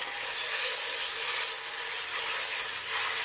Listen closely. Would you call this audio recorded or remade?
recorded